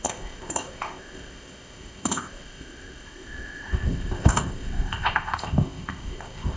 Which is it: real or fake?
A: fake